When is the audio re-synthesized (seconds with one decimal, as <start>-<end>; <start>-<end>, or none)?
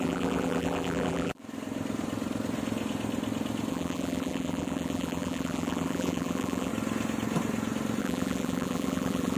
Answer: 0.0-1.4; 3.7-6.7; 8.0-9.4